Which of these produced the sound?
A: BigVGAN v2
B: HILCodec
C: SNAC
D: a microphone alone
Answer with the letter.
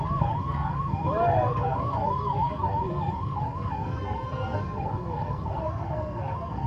C